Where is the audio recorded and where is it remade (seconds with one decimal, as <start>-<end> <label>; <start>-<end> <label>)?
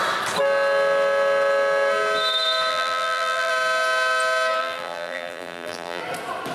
0.0-2.7 recorded; 2.7-3.5 remade; 3.5-4.6 recorded; 4.6-6.0 remade; 6.0-6.5 recorded